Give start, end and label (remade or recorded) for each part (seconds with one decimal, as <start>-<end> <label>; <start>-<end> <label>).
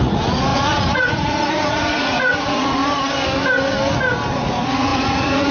0.0-2.8 remade; 2.8-4.3 recorded; 4.3-5.5 remade